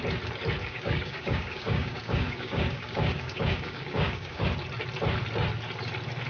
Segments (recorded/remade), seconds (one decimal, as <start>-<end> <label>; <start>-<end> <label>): 0.0-0.6 recorded; 0.6-4.4 remade; 4.4-6.3 recorded